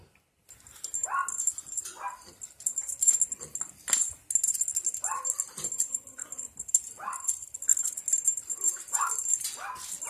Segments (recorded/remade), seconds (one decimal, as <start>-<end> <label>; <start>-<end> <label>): 0.0-10.1 recorded